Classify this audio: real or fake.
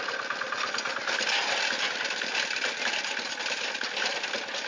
real